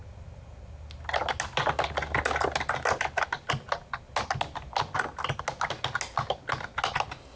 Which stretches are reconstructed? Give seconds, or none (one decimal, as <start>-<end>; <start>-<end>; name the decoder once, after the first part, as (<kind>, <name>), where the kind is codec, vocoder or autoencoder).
none